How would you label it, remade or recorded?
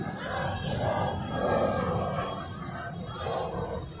recorded